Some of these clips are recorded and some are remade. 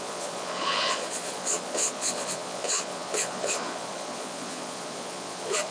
remade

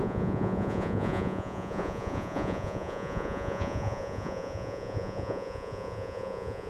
remade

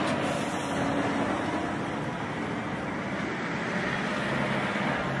recorded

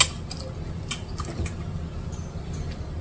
recorded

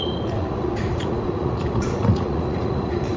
remade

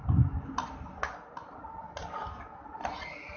recorded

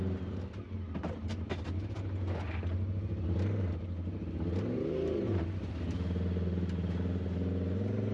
recorded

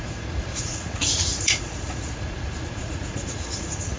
remade